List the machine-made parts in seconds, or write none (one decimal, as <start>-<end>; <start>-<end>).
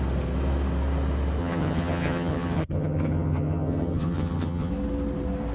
1.4-4.7